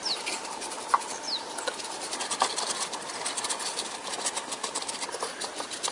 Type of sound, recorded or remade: recorded